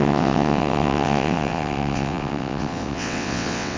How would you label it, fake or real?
fake